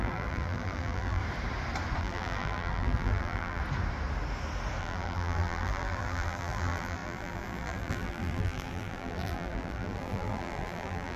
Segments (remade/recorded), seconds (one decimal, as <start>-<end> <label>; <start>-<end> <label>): 0.0-1.2 remade; 1.2-2.0 recorded; 2.0-3.6 remade; 3.6-4.8 recorded; 4.8-11.2 remade